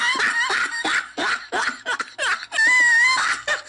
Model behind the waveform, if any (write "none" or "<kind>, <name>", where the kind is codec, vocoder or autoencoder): none